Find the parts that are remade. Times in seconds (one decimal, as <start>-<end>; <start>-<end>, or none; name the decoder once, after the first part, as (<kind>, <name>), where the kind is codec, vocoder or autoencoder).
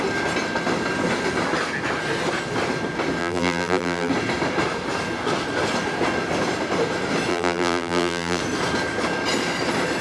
3.2-4.1 (vocoder, BigVGAN v2); 7.3-8.4